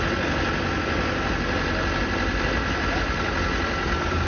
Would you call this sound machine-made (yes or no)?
no